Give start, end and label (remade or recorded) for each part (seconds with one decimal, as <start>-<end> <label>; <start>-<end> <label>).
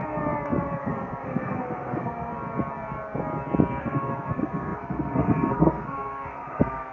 0.0-0.8 recorded; 0.8-2.3 remade; 2.3-3.8 recorded; 3.8-6.9 remade